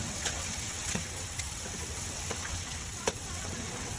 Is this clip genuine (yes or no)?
no